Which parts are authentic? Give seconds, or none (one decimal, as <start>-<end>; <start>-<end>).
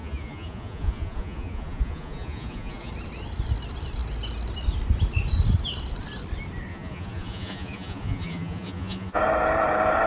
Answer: 2.9-6.7; 9.2-10.1